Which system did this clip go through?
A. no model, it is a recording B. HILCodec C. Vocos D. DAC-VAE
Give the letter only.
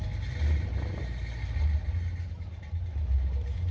A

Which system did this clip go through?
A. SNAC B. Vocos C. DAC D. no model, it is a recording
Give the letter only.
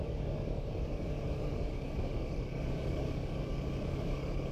C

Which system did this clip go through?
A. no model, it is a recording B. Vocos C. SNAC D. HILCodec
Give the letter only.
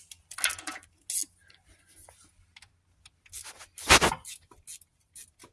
A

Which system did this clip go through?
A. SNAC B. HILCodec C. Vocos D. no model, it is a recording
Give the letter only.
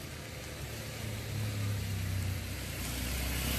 D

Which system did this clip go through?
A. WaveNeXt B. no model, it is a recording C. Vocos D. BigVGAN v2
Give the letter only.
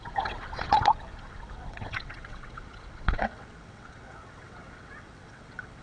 A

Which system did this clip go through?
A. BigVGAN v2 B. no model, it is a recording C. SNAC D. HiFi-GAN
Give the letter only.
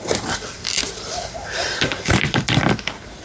A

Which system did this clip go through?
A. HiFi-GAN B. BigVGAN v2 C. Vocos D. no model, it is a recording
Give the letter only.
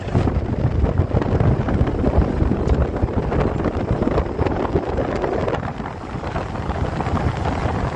D